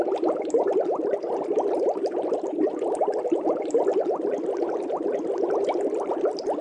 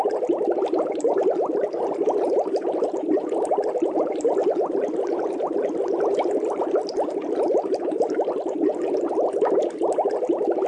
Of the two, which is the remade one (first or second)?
second